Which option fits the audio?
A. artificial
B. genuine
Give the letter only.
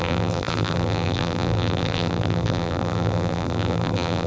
A